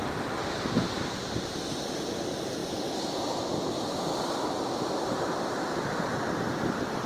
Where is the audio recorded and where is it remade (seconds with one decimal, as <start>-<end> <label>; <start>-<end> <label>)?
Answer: 0.0-7.1 recorded